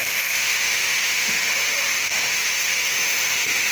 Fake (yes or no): yes